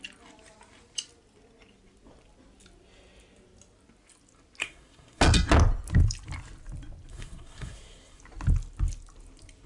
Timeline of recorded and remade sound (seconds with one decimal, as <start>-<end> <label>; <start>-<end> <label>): 0.0-4.6 recorded; 4.6-5.2 remade; 5.2-7.1 recorded; 7.1-8.2 remade; 8.2-9.7 recorded